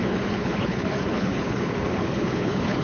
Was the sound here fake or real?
fake